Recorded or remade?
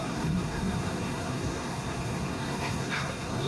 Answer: remade